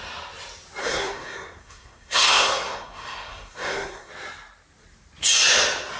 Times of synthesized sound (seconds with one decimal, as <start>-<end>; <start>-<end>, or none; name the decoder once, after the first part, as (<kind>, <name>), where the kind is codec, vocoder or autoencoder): 0.8-4.1 (codec, SNAC)